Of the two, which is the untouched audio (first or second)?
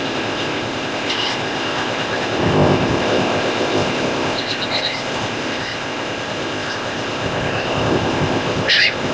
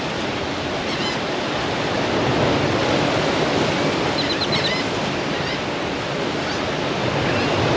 second